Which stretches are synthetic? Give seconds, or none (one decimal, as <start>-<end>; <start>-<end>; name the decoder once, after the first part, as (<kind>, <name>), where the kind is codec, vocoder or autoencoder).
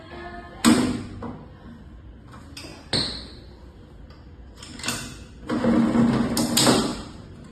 6.9-7.5 (vocoder, BigVGAN v2)